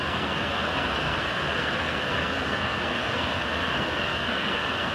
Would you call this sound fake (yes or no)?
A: yes